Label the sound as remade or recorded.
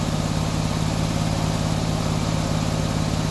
recorded